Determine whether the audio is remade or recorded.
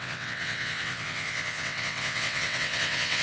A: remade